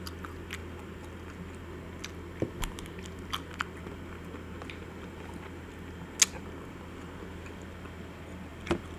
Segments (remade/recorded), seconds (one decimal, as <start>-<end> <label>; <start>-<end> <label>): 0.0-9.0 recorded